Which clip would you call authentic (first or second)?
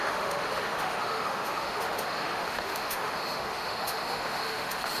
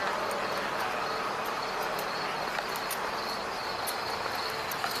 second